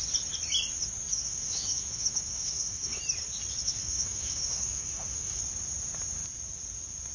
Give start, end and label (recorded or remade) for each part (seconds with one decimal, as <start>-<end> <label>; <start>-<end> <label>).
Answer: 0.0-1.1 recorded; 1.1-3.0 remade; 3.0-3.6 recorded; 3.6-5.4 remade; 5.4-7.1 recorded